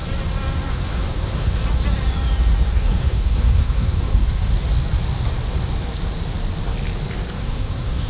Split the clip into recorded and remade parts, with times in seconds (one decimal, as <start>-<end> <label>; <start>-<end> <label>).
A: 0.0-0.7 recorded; 0.7-1.6 remade; 1.6-2.7 recorded; 2.7-4.5 remade; 4.5-7.4 recorded; 7.4-8.1 remade